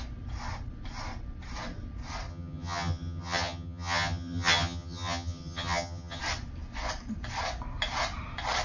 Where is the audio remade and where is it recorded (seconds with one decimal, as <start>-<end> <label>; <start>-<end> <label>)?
0.0-2.3 recorded; 2.3-6.2 remade; 6.2-8.6 recorded